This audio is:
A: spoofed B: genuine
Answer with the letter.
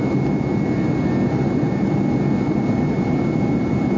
B